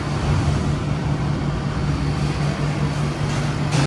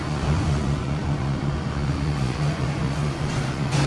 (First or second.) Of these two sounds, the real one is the first